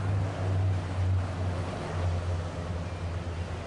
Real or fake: real